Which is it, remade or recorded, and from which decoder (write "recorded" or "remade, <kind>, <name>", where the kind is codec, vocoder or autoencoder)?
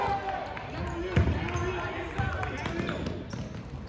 recorded